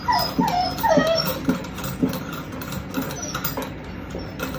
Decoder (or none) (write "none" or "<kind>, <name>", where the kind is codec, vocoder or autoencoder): none